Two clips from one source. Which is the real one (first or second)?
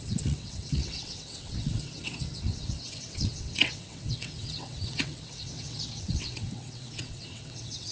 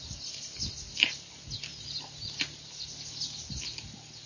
second